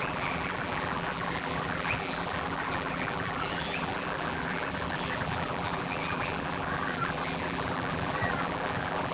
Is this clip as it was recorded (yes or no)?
no